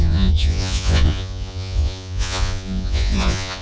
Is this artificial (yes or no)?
yes